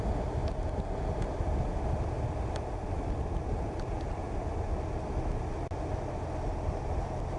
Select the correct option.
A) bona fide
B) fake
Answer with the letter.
A